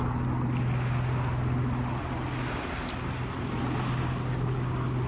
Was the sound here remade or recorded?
recorded